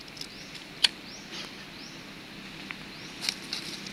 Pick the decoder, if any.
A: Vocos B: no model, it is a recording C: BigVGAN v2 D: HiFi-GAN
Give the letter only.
B